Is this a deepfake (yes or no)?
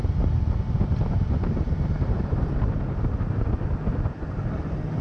no